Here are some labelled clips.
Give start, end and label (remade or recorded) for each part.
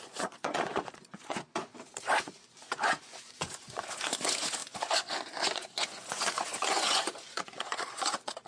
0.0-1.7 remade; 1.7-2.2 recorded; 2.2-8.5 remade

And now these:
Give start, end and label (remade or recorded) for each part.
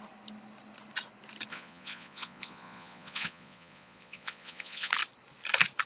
0.0-1.5 recorded; 1.5-4.9 remade; 4.9-5.9 recorded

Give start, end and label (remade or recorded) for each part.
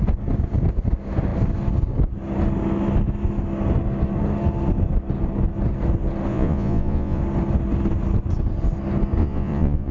0.0-6.3 recorded; 6.3-7.2 remade; 7.2-9.2 recorded; 9.2-9.9 remade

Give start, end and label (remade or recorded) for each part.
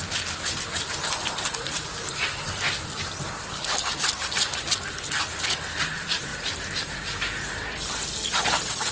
0.0-8.9 recorded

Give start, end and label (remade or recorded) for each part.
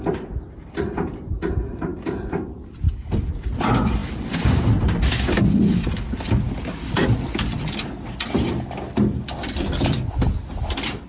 0.0-11.1 recorded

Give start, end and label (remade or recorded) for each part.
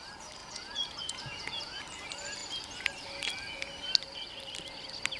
0.0-0.4 recorded; 0.4-1.8 remade; 1.8-5.2 recorded